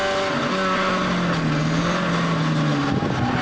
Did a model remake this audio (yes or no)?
no